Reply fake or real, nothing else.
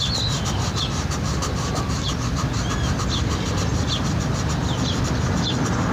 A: real